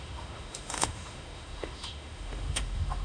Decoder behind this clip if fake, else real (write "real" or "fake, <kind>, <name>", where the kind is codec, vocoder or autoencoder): fake, autoencoder, DAC-VAE